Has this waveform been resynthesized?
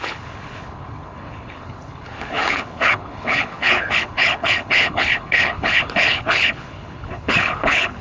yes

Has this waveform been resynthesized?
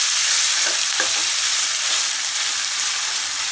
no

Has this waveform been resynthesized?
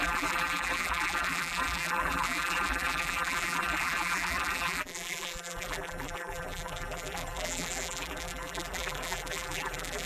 yes